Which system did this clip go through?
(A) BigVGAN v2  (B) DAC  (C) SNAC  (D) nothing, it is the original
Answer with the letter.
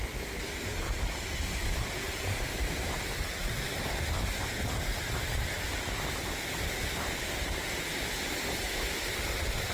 D